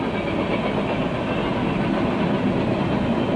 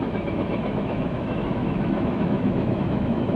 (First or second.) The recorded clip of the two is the first